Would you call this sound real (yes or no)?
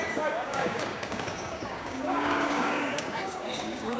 no